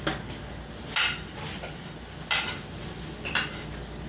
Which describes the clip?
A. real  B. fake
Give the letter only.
A